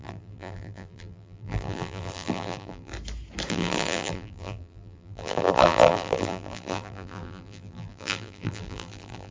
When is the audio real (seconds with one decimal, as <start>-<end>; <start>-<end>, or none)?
2.9-3.5